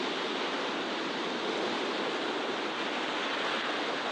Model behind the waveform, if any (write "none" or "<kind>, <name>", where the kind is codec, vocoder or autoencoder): none